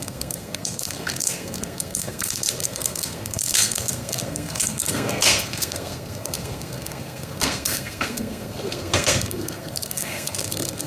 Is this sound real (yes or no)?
no